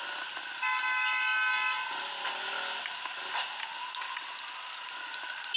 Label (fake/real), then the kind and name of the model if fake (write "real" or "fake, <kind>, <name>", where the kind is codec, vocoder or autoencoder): real